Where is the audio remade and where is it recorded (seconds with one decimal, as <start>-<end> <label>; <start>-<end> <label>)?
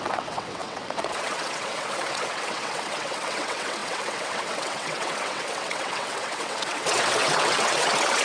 0.0-8.2 remade